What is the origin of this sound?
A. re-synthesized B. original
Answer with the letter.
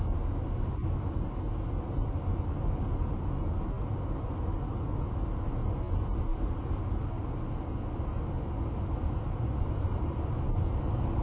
B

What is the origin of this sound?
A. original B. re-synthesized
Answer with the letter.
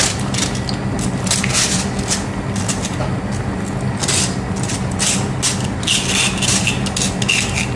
A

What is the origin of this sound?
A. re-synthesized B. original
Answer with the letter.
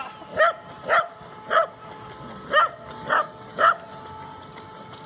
B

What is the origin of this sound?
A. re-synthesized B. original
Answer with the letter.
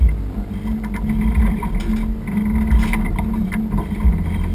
B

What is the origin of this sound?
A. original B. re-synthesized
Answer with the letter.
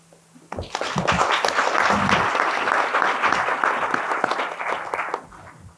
A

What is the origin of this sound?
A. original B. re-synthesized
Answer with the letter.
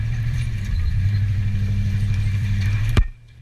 B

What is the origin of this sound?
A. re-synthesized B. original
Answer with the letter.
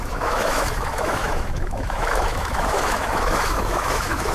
A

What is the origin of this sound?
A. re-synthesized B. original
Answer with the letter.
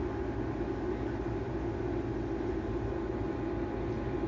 B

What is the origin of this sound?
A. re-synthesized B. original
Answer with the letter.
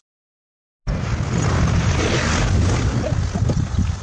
B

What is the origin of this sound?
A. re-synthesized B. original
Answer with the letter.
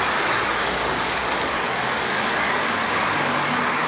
A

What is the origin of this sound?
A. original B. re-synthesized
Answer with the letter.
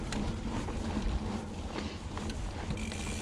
A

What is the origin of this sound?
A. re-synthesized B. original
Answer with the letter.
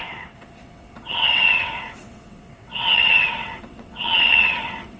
A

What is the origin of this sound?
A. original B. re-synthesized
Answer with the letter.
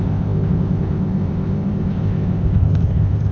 B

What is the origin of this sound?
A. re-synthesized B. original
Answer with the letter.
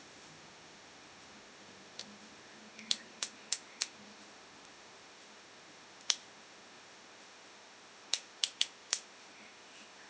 A